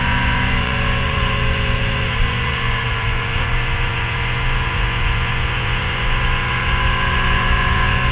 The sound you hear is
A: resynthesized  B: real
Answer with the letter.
A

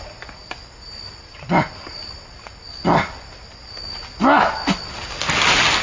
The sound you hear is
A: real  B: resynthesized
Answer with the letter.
A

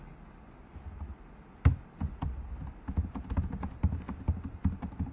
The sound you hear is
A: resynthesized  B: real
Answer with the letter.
B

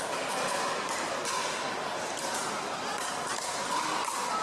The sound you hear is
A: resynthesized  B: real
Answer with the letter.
B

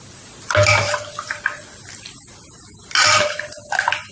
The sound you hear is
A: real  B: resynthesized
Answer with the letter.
A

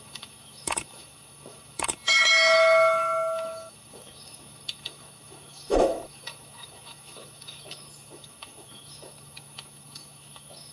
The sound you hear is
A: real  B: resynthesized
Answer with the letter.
B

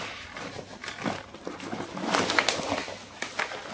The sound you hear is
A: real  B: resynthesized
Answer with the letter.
A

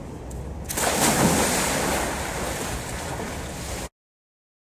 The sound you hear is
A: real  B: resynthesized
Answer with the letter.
A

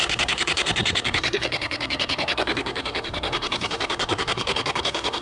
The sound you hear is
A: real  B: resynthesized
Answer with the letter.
B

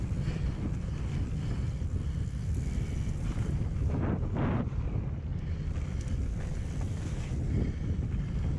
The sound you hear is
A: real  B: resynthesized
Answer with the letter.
A